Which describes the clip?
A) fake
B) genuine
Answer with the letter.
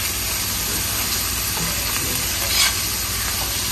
B